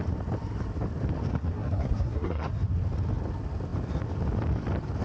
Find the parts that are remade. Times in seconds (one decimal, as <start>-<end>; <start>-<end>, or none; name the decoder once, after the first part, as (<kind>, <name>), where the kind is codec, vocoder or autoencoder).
1.3-2.5 (codec, SNAC)